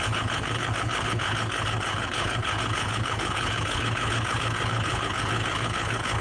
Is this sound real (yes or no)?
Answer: no